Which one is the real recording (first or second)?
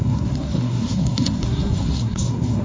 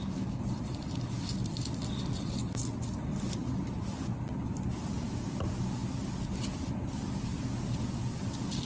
second